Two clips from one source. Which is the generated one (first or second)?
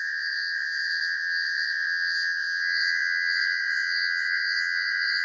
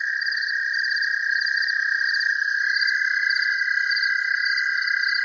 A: first